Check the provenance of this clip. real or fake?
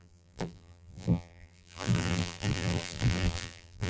fake